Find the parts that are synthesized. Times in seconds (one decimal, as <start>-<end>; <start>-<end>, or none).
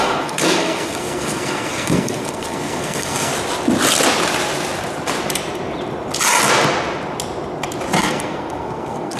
0.0-3.3; 8.0-9.2